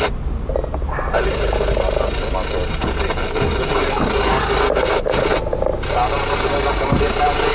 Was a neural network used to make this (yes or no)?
no